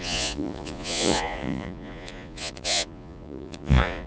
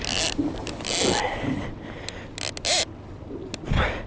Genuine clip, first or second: second